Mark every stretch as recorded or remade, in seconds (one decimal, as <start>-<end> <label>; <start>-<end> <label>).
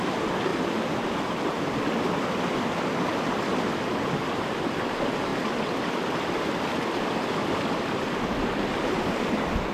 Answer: 0.0-0.5 recorded; 0.5-1.6 remade; 1.6-9.7 recorded